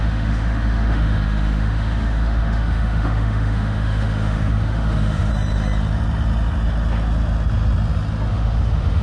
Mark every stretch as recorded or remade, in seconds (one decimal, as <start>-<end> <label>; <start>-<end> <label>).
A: 0.0-5.3 remade; 5.3-8.3 recorded; 8.3-9.0 remade